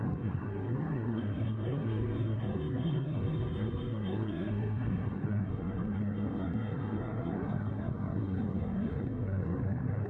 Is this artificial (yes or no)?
yes